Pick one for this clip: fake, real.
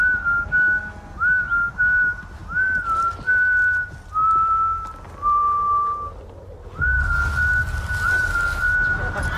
real